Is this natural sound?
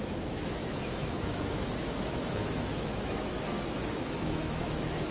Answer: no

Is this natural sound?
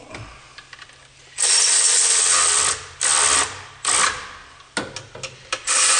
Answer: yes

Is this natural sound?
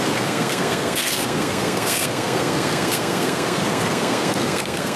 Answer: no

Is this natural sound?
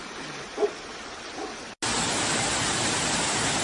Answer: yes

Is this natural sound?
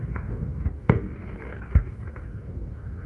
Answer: no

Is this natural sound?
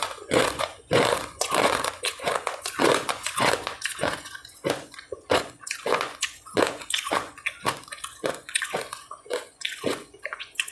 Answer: no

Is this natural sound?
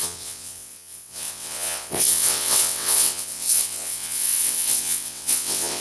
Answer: no